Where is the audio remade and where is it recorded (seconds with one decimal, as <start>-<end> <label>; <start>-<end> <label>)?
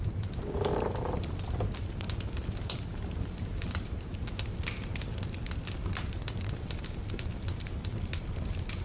0.0-4.1 remade; 4.1-6.1 recorded; 6.1-8.8 remade